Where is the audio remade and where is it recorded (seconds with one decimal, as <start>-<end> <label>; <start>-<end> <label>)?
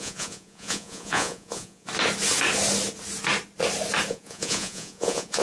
0.0-1.9 remade; 1.9-4.1 recorded; 4.1-5.4 remade